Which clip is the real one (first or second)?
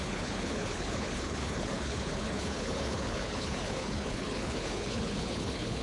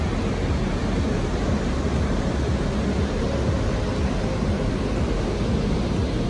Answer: second